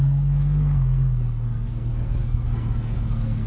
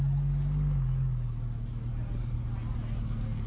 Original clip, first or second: second